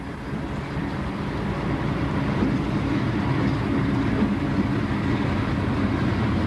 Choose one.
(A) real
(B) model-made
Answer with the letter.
A